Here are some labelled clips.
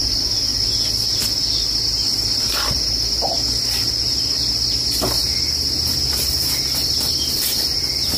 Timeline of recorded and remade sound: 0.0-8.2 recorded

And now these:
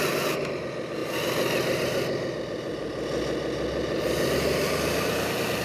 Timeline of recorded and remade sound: 0.0-5.6 recorded

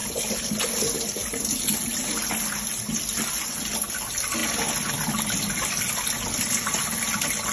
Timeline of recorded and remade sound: 0.0-0.6 remade; 0.6-4.4 recorded; 4.4-4.9 remade; 4.9-7.5 recorded